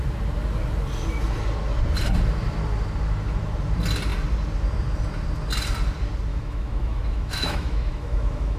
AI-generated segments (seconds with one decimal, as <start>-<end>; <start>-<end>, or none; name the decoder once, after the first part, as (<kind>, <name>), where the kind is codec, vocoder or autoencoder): 6.3-8.6 (autoencoder, DAC-VAE)